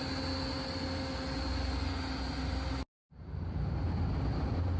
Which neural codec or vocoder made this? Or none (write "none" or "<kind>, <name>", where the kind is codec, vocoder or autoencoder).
none